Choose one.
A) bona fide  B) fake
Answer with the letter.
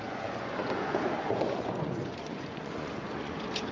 B